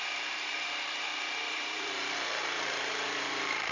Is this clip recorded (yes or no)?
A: no